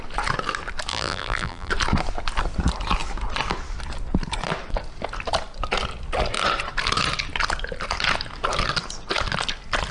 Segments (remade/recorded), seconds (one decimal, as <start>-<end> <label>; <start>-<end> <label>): 0.0-0.9 recorded; 0.9-1.7 remade; 1.7-9.9 recorded